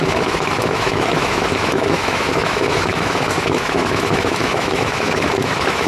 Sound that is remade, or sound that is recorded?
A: remade